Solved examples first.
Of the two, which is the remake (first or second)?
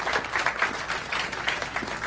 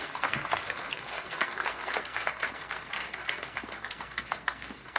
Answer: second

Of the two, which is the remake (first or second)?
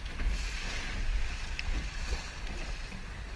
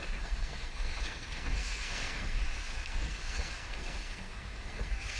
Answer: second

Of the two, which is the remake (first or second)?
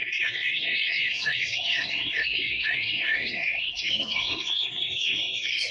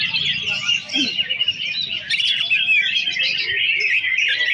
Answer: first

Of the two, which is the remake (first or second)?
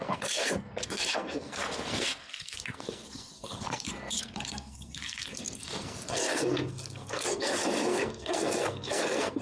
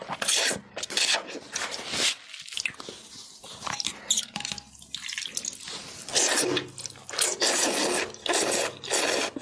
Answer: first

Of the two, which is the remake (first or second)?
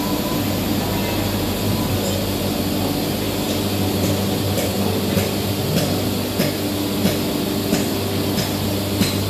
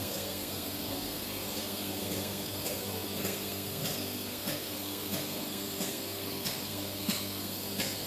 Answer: second